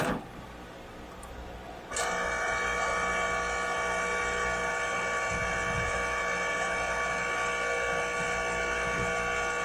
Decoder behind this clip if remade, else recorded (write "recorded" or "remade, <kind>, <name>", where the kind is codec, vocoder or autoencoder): recorded